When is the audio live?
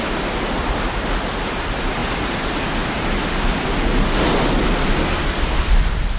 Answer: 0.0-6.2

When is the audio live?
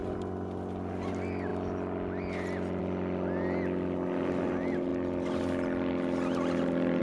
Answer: 0.0-7.0